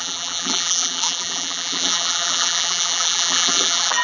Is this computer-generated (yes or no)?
yes